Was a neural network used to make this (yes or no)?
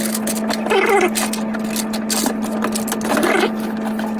no